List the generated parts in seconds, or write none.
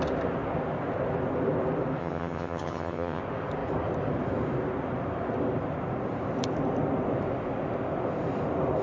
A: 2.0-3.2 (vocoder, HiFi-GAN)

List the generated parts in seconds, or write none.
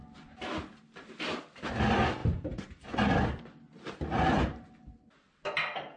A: none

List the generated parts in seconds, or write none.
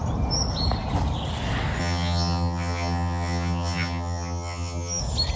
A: 1.8-5.0 (vocoder, HiFi-GAN)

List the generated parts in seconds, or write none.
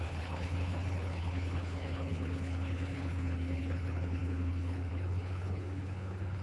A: 0.0-6.4 (codec, HILCodec)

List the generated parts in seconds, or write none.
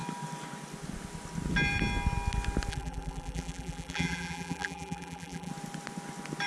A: 2.7-5.5 (vocoder, BigVGAN v2)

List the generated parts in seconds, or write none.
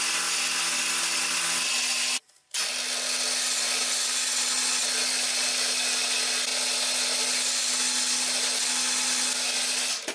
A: none